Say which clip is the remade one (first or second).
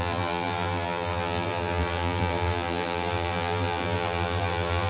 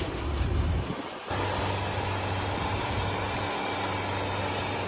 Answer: first